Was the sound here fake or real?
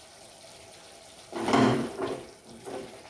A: fake